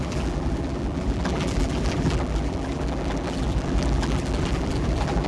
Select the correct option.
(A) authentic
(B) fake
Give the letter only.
B